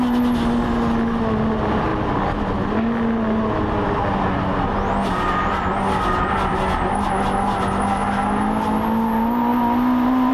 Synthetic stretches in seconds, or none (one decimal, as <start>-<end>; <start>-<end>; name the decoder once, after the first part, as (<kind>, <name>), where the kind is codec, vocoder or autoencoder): none

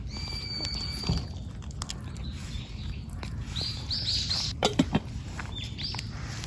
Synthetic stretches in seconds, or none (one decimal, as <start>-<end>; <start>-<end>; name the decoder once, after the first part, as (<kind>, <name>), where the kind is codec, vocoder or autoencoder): 2.3-5.9 (vocoder, BigVGAN v2)

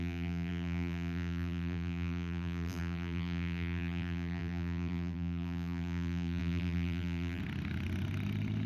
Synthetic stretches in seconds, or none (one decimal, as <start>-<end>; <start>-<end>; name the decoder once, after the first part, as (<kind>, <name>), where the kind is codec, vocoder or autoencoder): 0.0-7.4 (vocoder, BigVGAN v2)

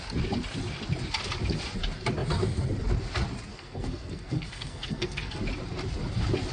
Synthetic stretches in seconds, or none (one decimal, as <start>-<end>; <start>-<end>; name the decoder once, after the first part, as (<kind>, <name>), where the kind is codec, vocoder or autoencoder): 3.5-5.4 (codec, SNAC)